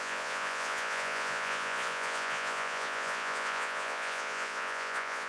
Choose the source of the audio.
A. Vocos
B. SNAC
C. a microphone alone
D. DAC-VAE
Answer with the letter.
A